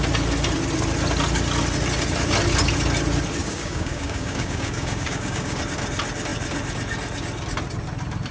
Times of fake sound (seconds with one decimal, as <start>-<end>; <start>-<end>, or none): 3.4-5.6